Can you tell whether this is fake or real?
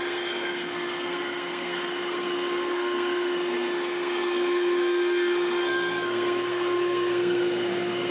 fake